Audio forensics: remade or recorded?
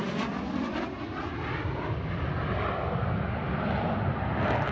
recorded